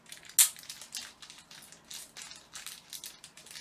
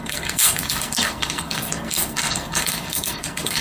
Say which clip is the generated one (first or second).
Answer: second